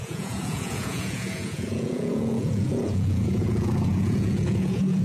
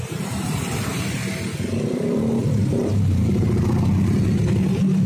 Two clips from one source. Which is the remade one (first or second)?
first